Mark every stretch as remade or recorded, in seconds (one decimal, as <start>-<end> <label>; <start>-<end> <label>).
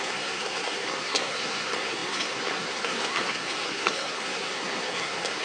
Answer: 0.0-5.4 remade